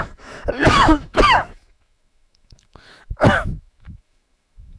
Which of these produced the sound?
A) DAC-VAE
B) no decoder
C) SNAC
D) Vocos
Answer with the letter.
A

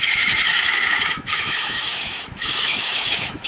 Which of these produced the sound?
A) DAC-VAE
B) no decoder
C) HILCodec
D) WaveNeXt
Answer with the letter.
A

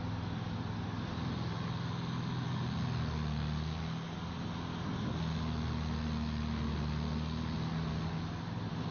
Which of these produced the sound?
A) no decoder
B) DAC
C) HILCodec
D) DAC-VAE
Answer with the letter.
A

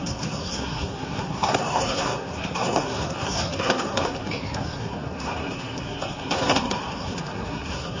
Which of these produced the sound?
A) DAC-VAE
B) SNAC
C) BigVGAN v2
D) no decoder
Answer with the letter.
B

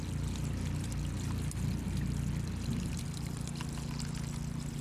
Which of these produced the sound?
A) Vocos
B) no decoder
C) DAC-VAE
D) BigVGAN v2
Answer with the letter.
B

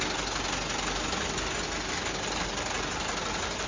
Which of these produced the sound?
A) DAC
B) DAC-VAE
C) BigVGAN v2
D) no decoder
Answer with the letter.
D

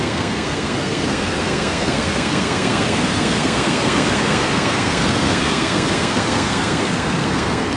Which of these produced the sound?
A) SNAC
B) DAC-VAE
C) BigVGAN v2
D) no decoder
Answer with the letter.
A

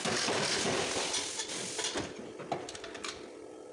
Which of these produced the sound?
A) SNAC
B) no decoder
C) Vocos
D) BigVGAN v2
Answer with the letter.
D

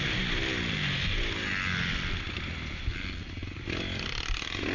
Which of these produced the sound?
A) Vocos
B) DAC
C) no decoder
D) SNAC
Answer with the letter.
C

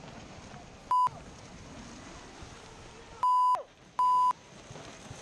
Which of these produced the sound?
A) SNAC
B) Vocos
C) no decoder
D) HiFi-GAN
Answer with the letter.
C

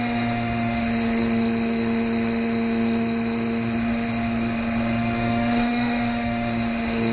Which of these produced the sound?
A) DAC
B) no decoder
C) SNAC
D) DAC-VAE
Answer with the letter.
D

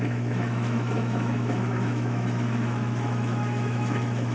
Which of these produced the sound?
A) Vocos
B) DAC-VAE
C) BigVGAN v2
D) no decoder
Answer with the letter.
B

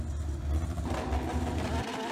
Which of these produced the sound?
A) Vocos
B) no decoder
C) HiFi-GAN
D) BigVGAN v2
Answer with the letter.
B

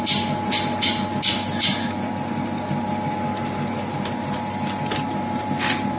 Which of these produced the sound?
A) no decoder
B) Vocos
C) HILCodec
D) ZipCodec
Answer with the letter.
A